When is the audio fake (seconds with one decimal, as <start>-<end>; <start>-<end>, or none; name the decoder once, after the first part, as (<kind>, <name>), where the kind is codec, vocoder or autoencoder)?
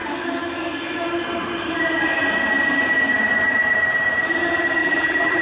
4.8-5.4 (vocoder, BigVGAN v2)